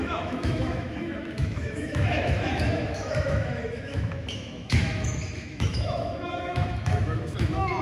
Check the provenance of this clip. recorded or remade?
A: remade